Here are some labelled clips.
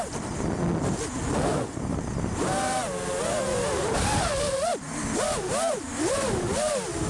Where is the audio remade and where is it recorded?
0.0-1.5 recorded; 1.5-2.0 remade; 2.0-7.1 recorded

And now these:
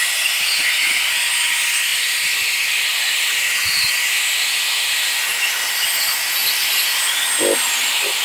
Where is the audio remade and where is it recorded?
0.0-8.2 recorded

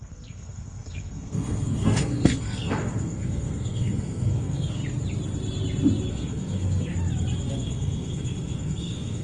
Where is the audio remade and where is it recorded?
0.0-4.8 remade; 4.8-6.1 recorded; 6.1-6.9 remade; 6.9-7.5 recorded; 7.5-9.2 remade

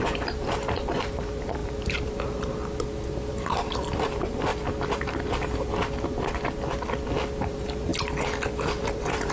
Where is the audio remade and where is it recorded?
0.0-2.6 remade; 2.6-3.3 recorded; 3.3-4.5 remade; 4.5-7.4 recorded; 7.4-7.9 remade; 7.9-8.8 recorded; 8.8-9.3 remade

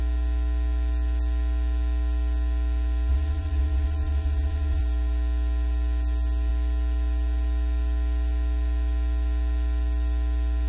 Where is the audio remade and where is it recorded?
0.0-3.1 recorded; 3.1-4.8 remade; 4.8-10.7 recorded